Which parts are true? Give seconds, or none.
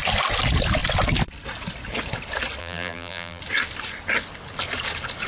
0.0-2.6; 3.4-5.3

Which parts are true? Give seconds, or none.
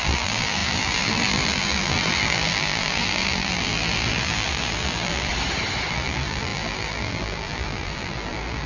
5.3-5.9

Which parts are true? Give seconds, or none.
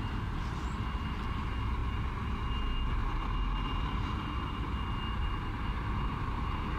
0.0-6.8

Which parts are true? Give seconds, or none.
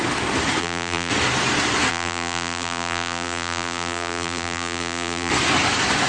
0.0-0.6; 1.1-1.9; 5.3-6.1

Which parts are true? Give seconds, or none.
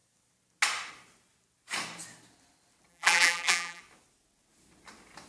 0.0-2.9; 3.8-5.3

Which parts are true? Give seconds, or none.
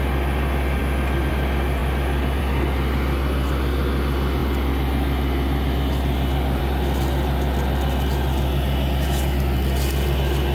0.0-10.5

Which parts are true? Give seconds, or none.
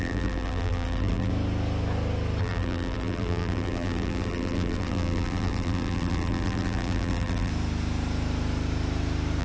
1.3-2.4; 7.5-9.4